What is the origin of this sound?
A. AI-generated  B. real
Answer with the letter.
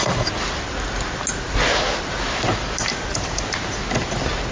B